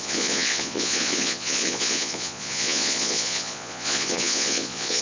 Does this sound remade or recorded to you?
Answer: remade